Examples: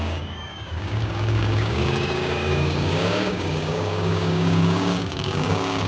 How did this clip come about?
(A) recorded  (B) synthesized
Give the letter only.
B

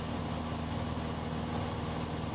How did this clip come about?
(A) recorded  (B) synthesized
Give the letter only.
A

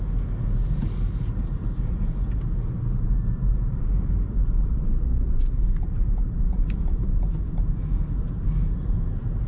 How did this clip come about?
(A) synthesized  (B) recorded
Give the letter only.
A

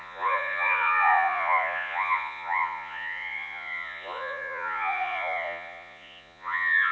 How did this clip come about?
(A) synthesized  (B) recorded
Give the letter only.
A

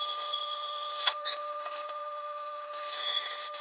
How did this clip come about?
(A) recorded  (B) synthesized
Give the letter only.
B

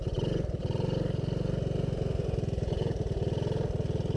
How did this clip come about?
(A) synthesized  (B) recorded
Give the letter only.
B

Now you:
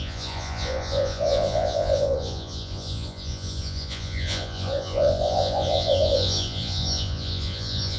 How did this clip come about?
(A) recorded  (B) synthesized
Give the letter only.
B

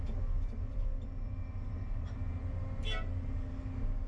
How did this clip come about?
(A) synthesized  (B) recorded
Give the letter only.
B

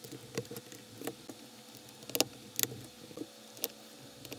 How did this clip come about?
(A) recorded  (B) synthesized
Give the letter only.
A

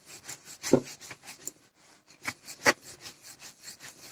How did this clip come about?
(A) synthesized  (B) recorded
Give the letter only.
B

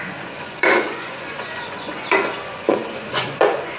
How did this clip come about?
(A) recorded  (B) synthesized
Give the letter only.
B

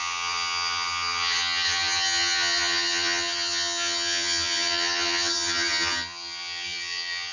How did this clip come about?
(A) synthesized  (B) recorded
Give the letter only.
A